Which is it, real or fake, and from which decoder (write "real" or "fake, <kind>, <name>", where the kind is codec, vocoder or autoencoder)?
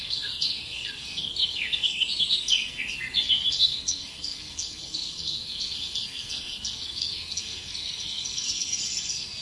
fake, codec, SNAC